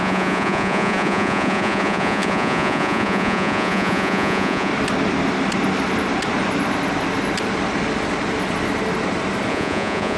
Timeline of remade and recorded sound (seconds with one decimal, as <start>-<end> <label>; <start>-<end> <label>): 0.0-4.7 remade; 4.7-9.5 recorded; 9.5-10.2 remade